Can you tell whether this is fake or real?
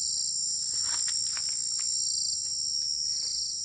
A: real